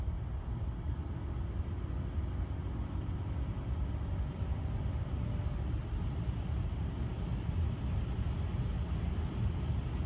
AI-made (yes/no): no